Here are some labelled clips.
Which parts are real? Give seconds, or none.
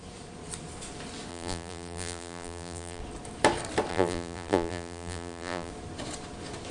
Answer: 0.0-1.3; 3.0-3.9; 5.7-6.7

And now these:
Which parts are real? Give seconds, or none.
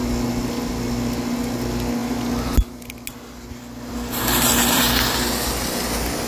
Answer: 0.0-6.3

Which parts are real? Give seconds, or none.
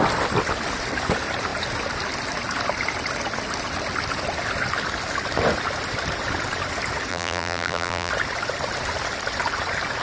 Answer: 0.0-7.1; 8.1-10.0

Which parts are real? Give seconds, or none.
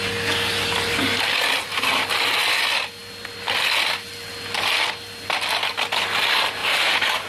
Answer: 0.0-6.6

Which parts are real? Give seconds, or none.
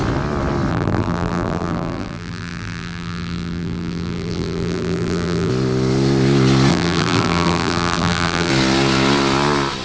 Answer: 0.0-0.7; 5.5-6.7; 8.5-9.8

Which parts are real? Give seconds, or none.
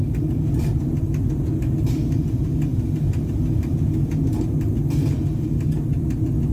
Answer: 1.6-2.7; 3.8-6.5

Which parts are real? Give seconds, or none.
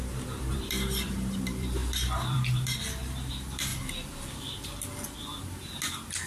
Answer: 3.7-6.3